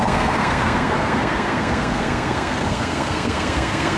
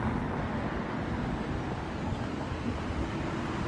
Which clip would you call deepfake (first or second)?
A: first